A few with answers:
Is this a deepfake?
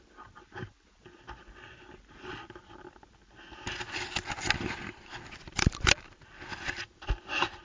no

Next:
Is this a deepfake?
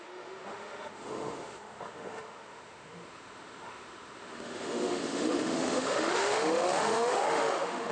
yes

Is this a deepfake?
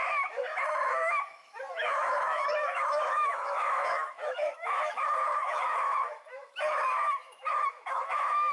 yes